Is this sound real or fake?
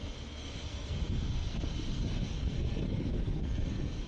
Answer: fake